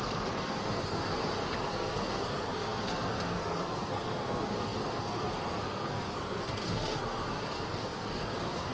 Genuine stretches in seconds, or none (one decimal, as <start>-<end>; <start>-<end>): 1.2-1.7